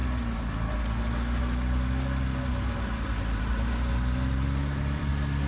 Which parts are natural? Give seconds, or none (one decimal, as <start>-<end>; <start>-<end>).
0.0-2.5; 5.1-5.5